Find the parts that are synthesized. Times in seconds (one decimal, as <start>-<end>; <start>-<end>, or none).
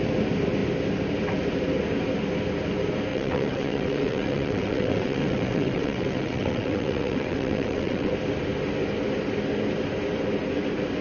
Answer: 3.1-8.1